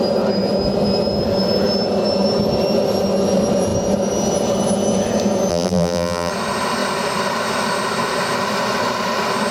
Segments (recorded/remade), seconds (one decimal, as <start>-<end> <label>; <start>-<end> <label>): 0.0-5.5 recorded; 5.5-6.3 remade; 6.3-9.5 recorded